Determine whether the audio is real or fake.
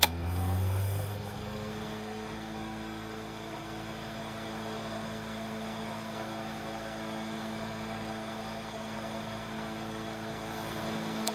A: fake